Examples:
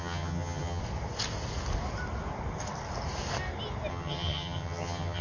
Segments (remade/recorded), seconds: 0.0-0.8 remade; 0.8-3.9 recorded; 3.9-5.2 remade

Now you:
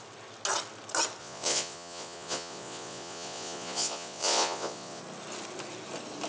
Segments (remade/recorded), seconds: 0.0-1.2 recorded; 1.2-5.0 remade; 5.0-6.3 recorded

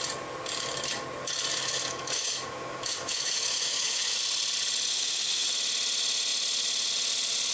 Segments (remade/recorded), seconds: 0.0-1.5 recorded; 1.5-4.2 remade; 4.2-4.9 recorded; 4.9-5.5 remade; 5.5-7.5 recorded

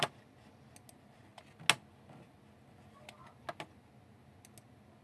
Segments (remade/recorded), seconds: 0.0-5.0 recorded

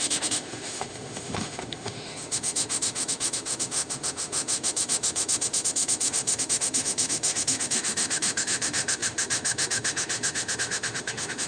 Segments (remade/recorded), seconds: 0.0-11.5 remade

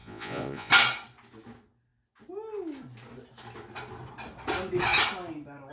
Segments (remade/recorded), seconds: 0.0-0.7 remade; 0.7-5.7 recorded